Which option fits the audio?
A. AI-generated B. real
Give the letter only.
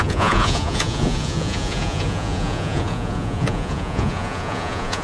A